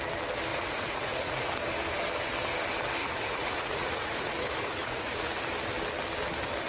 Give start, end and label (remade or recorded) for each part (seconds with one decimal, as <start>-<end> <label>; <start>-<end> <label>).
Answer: 0.0-0.5 recorded; 0.5-1.5 remade; 1.5-3.0 recorded; 3.0-5.4 remade; 5.4-6.7 recorded